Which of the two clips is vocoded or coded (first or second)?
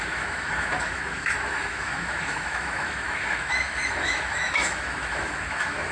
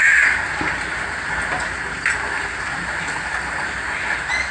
first